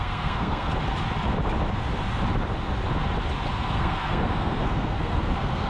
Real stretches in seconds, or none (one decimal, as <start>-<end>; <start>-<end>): 0.7-3.5